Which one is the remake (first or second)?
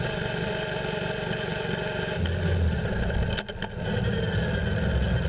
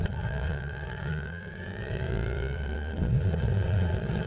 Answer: second